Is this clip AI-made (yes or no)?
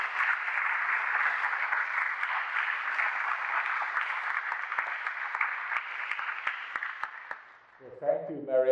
no